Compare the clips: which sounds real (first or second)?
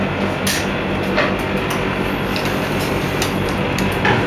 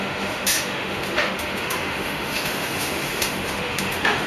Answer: first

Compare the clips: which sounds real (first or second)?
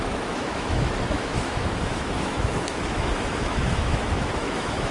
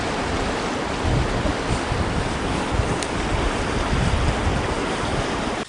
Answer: second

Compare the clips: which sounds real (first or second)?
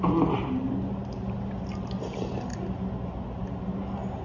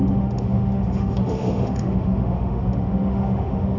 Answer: first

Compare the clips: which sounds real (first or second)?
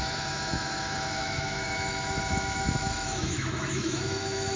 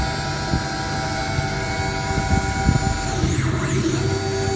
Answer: second